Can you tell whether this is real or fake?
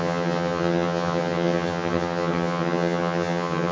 fake